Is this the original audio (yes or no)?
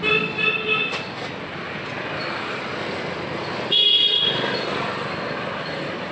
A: yes